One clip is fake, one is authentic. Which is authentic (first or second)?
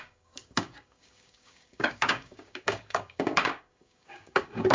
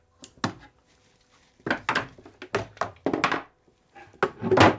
second